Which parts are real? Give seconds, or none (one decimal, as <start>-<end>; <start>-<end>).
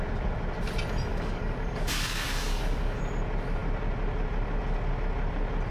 0.0-1.1; 3.0-5.7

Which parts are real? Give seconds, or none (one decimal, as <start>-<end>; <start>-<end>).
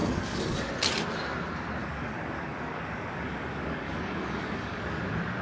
0.7-1.8; 5.0-5.4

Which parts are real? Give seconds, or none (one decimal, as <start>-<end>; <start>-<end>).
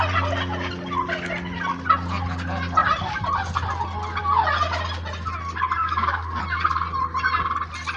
0.0-5.8; 6.4-8.0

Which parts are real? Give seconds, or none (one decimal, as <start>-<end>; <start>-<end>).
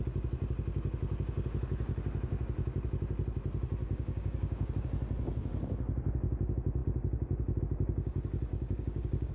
0.0-3.8; 4.7-8.5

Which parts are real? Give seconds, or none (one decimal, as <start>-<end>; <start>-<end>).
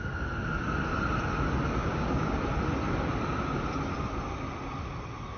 0.0-1.8; 2.4-5.4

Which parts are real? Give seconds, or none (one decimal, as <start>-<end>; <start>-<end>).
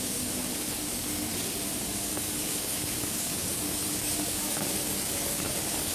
1.3-1.8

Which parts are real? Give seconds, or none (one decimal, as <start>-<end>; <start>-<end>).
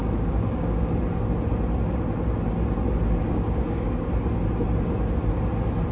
0.9-3.2; 4.1-5.9